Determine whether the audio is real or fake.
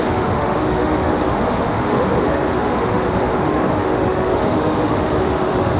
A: fake